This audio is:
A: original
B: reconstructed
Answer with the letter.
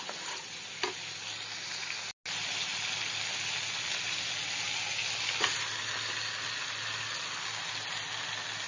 A